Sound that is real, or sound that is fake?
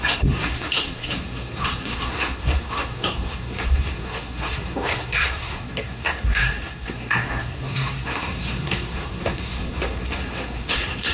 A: fake